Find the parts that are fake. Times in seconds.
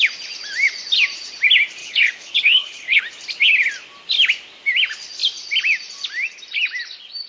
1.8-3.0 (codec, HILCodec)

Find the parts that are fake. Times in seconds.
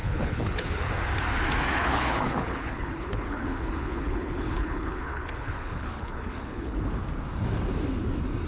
0.0-0.9 (codec, HILCodec); 1.7-6.8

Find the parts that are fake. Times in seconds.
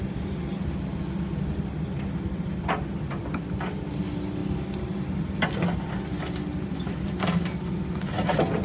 none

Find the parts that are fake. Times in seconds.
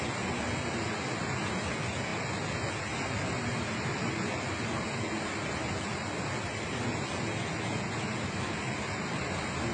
none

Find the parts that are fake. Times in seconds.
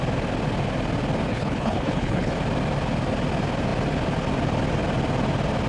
1.3-2.3 (codec, HILCodec)